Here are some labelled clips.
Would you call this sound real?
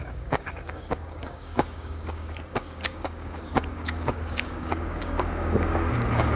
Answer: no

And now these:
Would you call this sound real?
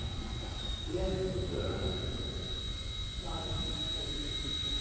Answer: no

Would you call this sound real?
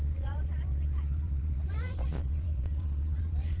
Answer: no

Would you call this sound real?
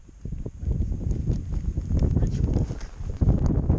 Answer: yes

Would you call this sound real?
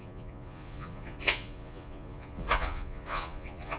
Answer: no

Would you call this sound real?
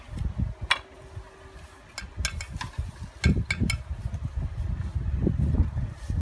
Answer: yes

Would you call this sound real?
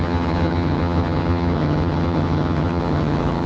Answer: no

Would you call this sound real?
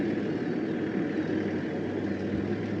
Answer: yes